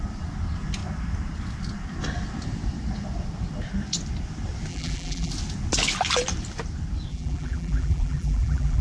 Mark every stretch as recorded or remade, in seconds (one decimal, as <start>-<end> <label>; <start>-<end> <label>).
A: 0.0-4.7 recorded; 4.7-5.3 remade; 5.3-7.1 recorded; 7.1-8.8 remade